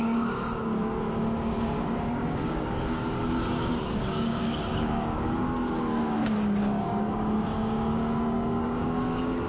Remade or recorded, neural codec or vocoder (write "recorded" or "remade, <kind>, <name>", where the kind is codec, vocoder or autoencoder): remade, codec, DAC